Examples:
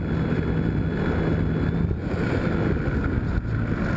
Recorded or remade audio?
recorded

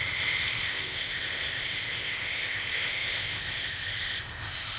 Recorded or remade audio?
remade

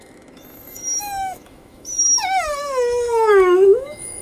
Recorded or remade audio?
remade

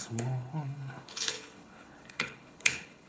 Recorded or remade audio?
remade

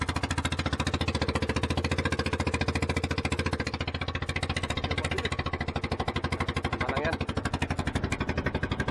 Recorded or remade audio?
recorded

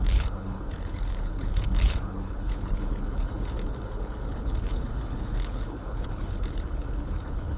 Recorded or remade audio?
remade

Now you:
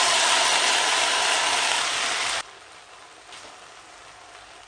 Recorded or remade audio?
recorded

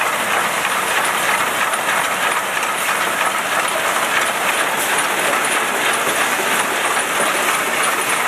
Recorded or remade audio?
recorded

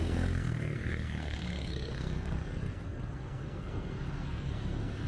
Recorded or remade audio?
remade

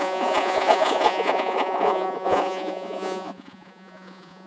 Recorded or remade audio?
remade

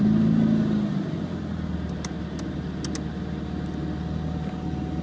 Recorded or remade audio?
recorded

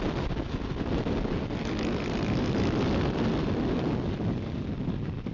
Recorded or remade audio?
recorded